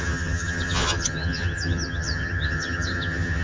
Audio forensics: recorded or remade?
remade